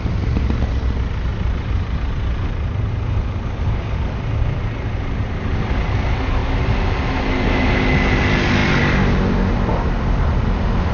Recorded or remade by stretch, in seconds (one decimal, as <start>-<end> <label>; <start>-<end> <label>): 0.0-1.3 recorded; 1.3-2.9 remade; 2.9-8.6 recorded; 8.6-9.2 remade; 9.2-9.7 recorded; 9.7-10.9 remade